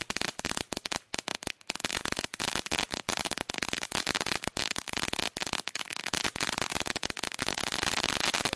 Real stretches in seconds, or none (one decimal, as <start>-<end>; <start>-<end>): 5.4-8.1